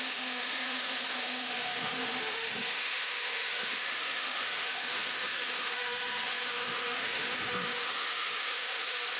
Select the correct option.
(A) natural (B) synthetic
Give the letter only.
B